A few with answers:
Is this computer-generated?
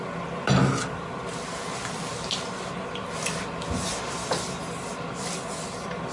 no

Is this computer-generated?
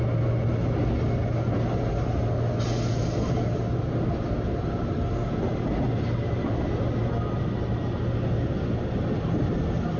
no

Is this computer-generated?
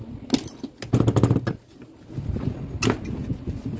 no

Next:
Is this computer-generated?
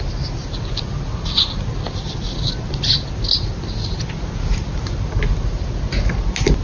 no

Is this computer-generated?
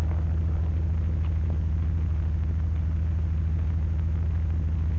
no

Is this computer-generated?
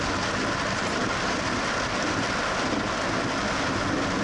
no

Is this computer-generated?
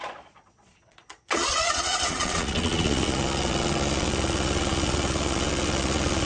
yes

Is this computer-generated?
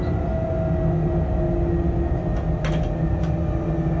no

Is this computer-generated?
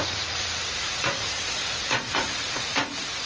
yes